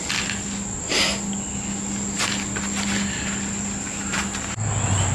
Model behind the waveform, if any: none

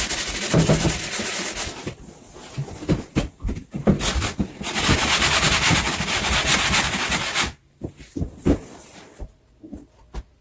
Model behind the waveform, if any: none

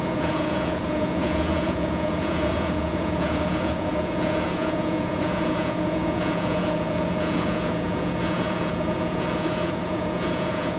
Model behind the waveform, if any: vocoder, Vocos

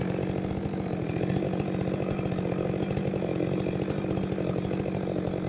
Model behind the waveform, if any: none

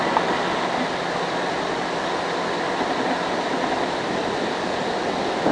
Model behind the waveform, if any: none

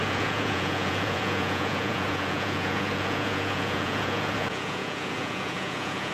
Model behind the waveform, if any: vocoder, Vocos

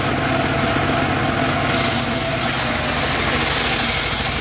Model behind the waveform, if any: none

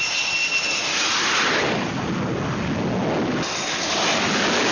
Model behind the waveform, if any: none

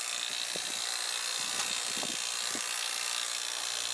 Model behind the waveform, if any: none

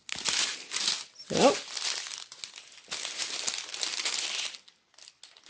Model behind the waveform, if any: none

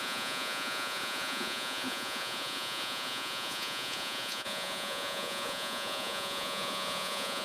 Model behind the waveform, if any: vocoder, Vocos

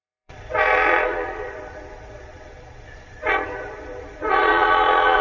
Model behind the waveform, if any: vocoder, Vocos